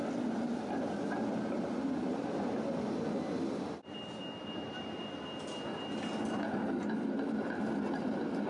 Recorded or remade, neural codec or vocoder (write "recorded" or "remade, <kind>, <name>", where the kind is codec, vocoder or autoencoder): recorded